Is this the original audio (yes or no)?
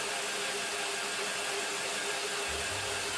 yes